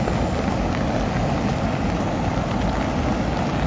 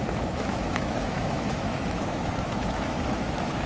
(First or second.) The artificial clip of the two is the second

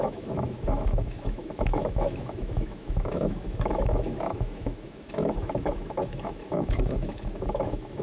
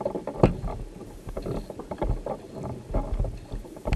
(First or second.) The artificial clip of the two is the first